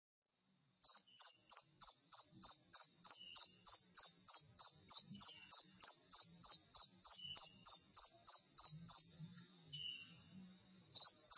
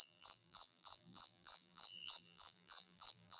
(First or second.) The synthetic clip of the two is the second